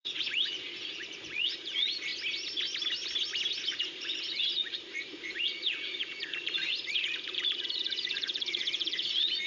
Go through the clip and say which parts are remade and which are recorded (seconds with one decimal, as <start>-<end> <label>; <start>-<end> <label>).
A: 0.0-2.1 remade; 2.1-3.6 recorded; 3.6-9.5 remade